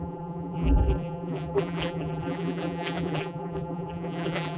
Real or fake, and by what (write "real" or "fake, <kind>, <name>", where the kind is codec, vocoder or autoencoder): fake, vocoder, BigVGAN v2